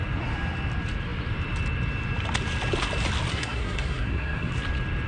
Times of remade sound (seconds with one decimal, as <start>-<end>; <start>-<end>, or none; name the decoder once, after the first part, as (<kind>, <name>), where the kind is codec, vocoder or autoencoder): 3.3-4.5 (codec, SNAC)